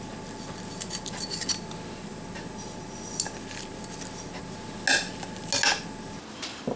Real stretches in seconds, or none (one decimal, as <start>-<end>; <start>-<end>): 0.0-6.8